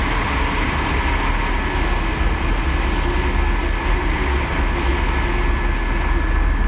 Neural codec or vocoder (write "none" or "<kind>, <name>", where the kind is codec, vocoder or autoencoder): none